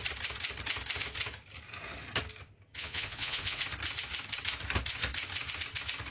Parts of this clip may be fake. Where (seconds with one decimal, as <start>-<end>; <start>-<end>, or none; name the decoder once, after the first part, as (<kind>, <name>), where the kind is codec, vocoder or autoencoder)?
2.7-3.6 (vocoder, Vocos)